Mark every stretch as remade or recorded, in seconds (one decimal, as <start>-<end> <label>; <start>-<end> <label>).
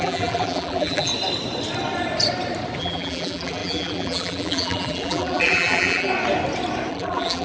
0.0-1.1 remade; 1.1-2.8 recorded; 2.8-6.1 remade; 6.1-6.9 recorded; 6.9-7.4 remade